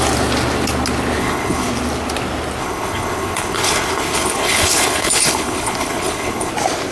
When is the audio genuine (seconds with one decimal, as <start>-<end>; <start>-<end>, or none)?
0.0-1.2; 1.7-2.6; 6.5-6.9